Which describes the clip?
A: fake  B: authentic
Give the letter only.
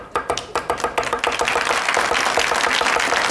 B